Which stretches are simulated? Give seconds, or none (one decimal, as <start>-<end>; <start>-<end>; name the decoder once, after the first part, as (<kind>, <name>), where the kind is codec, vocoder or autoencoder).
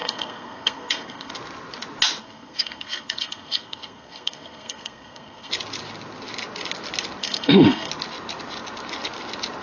0.0-1.3 (codec, SNAC); 2.2-5.5; 7.2-7.9